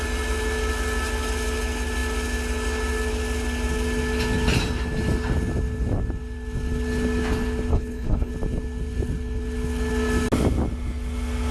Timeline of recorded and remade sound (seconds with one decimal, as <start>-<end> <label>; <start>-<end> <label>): 0.0-7.7 recorded; 7.7-8.3 remade; 8.3-11.5 recorded

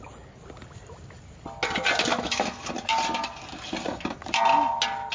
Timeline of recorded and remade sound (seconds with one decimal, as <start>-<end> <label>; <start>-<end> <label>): 0.0-2.1 recorded; 2.1-2.7 remade; 2.7-5.1 recorded

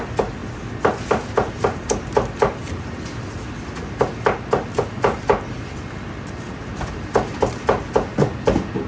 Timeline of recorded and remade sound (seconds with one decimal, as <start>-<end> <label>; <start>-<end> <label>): 0.0-8.9 recorded

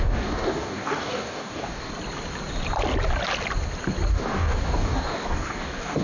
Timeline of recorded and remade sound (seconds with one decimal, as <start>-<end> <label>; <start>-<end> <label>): 0.0-1.9 remade; 1.9-4.1 recorded; 4.1-6.0 remade

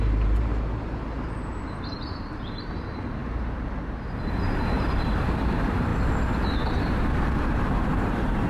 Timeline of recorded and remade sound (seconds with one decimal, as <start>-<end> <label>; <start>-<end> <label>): 0.0-0.5 remade; 0.5-1.5 recorded; 1.5-3.2 remade; 3.2-3.8 recorded; 3.8-5.9 remade; 5.9-6.5 recorded; 6.5-8.5 remade

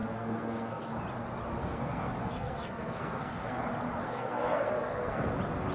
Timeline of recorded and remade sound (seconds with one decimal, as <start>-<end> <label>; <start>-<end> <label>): 0.0-0.9 remade; 0.9-1.6 recorded; 1.6-3.6 remade; 3.6-4.0 recorded; 4.0-5.3 remade; 5.3-5.7 recorded

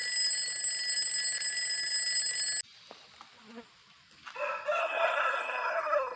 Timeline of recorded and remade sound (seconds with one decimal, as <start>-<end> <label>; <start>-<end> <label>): 0.0-4.8 recorded; 4.8-6.2 remade